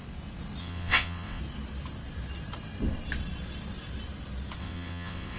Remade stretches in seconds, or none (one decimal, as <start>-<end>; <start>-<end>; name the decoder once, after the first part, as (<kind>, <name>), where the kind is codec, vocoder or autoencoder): 0.6-1.4 (vocoder, WaveNeXt); 4.6-5.4